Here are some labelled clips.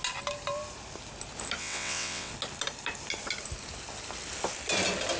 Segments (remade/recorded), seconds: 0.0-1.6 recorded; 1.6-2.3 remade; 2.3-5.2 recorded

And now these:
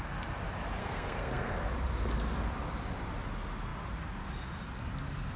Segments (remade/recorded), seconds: 0.0-0.8 recorded; 0.8-1.6 remade; 1.6-5.4 recorded

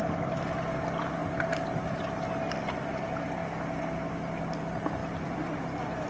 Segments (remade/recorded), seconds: 0.0-1.2 recorded; 1.2-1.8 remade; 1.8-5.0 recorded; 5.0-5.6 remade; 5.6-6.1 recorded

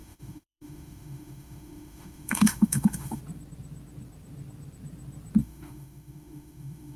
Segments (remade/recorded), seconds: 0.0-3.2 remade; 3.2-5.4 recorded; 5.4-7.0 remade

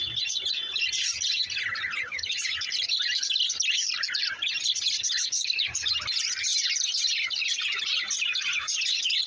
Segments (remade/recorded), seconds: 0.0-9.3 recorded

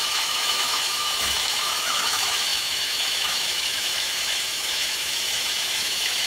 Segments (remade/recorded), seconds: 0.0-6.3 remade

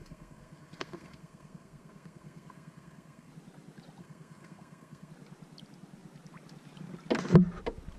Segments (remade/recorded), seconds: 0.0-3.3 remade; 3.3-4.0 recorded; 4.0-5.1 remade; 5.1-8.0 recorded